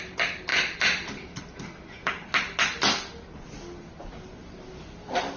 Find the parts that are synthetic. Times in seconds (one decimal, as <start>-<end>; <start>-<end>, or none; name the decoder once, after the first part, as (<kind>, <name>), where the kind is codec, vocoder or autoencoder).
0.5-1.4 (vocoder, BigVGAN v2); 4.4-5.4